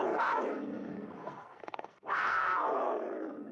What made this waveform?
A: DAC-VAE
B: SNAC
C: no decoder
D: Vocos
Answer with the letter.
B